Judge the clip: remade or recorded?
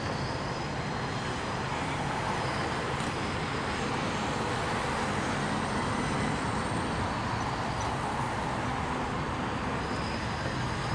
recorded